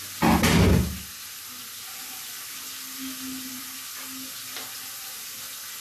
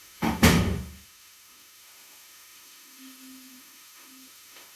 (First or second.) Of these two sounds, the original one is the first